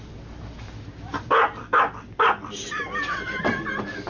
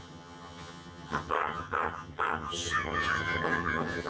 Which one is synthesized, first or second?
second